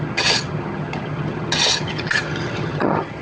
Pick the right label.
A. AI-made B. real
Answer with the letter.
A